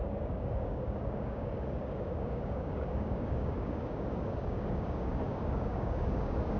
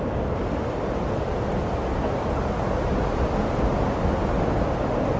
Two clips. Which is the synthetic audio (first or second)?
first